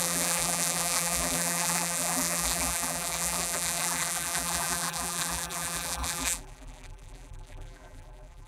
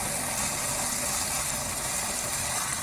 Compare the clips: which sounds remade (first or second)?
first